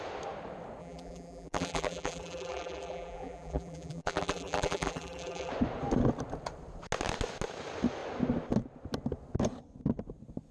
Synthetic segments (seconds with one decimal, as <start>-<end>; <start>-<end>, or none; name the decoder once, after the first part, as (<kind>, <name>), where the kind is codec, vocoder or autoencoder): 0.8-5.5 (vocoder, BigVGAN v2)